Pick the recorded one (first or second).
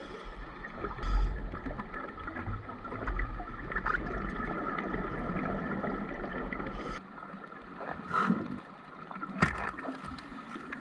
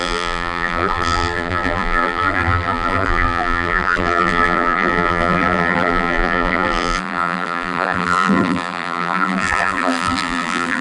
first